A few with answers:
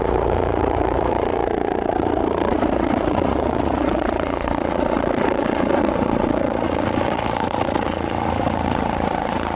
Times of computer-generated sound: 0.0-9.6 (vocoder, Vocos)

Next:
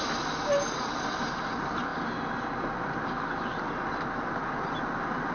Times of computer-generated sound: none

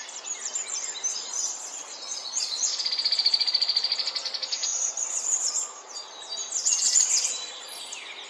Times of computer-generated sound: 1.1-2.7 (vocoder, Vocos); 4.7-5.9; 6.6-7.3

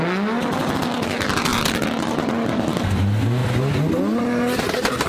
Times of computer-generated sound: none

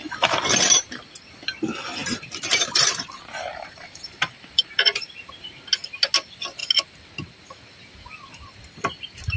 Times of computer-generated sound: 0.0-1.0 (vocoder, BigVGAN v2); 2.0-5.6

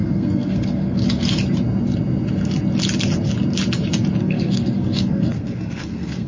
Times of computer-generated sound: 0.0-1.0 (codec, SNAC); 4.2-6.3

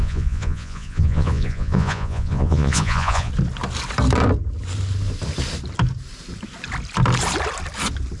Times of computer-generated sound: 0.0-3.3 (vocoder, Vocos)

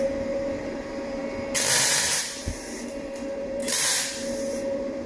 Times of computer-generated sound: 0.0-1.2 (vocoder, BigVGAN v2); 2.0-3.6; 4.5-5.1